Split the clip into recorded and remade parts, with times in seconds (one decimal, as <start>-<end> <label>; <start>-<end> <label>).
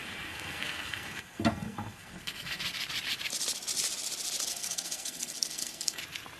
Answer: 0.0-2.6 remade; 2.6-4.5 recorded; 4.5-6.0 remade; 6.0-6.4 recorded